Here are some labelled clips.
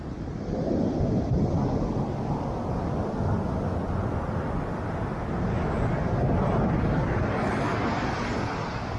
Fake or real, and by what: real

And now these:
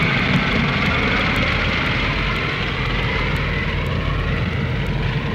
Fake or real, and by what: real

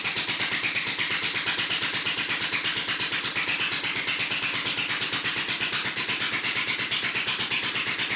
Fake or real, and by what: real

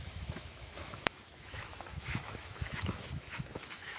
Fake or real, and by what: fake, autoencoder, DAC-VAE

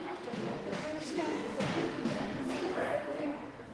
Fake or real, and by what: fake, autoencoder, DAC-VAE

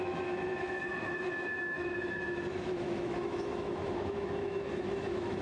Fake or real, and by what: fake, autoencoder, DAC-VAE